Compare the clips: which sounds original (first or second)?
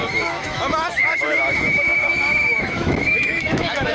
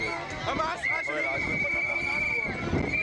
second